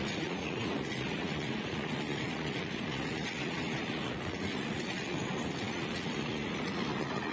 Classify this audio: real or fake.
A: fake